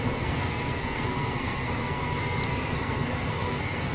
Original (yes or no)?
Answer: no